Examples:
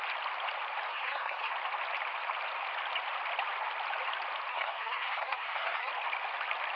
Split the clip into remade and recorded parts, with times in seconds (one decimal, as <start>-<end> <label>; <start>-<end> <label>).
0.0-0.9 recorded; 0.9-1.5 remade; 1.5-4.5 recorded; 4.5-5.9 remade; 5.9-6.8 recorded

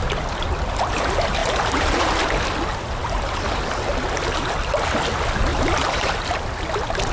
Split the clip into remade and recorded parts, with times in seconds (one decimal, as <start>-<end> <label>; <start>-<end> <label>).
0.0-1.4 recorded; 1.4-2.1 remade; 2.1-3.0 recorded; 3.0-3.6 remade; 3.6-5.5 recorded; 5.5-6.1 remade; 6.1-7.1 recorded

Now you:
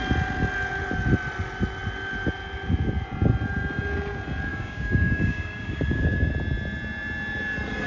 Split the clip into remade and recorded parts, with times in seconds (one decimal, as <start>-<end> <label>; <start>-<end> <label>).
0.0-4.5 recorded; 4.5-6.3 remade; 6.3-7.9 recorded

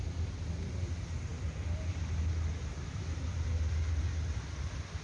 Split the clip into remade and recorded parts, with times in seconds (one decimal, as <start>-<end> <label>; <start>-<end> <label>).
0.0-5.0 recorded

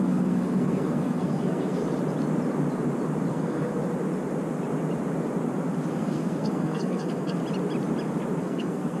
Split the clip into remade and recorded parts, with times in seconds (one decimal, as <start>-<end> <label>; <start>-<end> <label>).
0.0-1.8 remade; 1.8-3.3 recorded; 3.3-3.7 remade; 3.7-5.9 recorded; 5.9-7.4 remade; 7.4-8.4 recorded; 8.4-9.0 remade

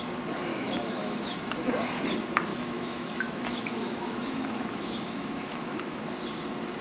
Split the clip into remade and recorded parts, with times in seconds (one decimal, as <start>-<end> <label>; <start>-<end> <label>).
0.0-0.5 recorded; 0.5-1.7 remade; 1.7-2.5 recorded; 2.5-6.0 remade; 6.0-6.8 recorded

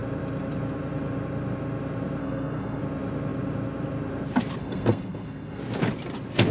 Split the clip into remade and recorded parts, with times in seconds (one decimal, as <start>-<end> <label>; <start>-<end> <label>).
0.0-2.2 recorded; 2.2-2.8 remade; 2.8-4.6 recorded; 4.6-5.6 remade; 5.6-6.5 recorded